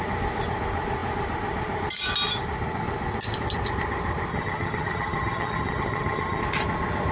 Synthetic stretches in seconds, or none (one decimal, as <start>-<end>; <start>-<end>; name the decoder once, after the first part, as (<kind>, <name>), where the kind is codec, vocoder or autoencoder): 4.3-6.4 (vocoder, HiFi-GAN)